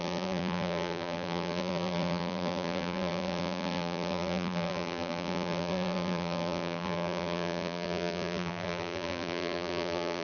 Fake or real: fake